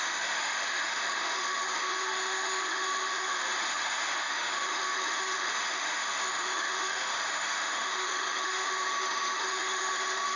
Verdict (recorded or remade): remade